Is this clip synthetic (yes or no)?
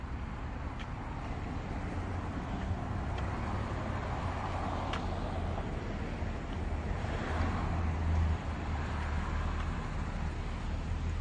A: no